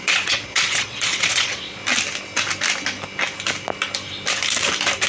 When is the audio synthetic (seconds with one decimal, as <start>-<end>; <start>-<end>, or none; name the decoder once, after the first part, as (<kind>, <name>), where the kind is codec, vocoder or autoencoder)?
0.0-1.8 (vocoder, Vocos)